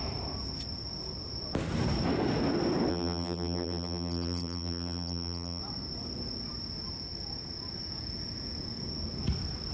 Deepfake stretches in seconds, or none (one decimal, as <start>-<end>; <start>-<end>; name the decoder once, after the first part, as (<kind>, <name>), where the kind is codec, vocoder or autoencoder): 2.9-5.6 (vocoder, BigVGAN v2)